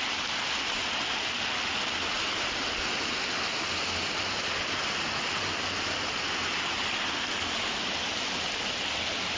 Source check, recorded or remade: recorded